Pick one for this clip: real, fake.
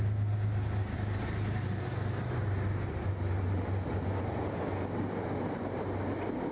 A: real